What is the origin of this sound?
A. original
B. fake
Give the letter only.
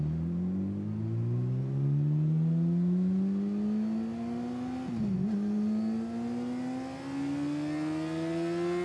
A